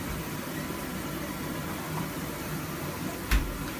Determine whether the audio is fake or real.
fake